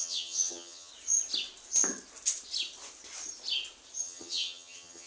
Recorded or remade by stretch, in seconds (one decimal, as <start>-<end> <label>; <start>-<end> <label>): 0.0-0.9 remade; 0.9-4.0 recorded; 4.0-5.1 remade